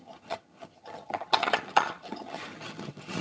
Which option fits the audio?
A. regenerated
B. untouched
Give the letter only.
A